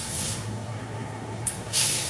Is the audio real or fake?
fake